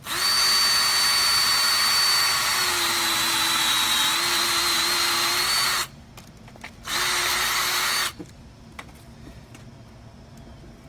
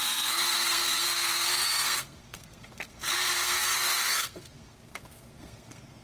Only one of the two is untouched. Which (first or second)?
first